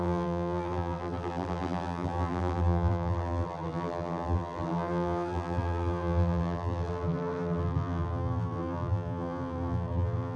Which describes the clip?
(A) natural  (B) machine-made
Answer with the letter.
B